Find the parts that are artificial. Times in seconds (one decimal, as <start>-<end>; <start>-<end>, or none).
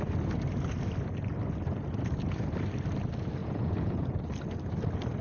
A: 3.4-4.2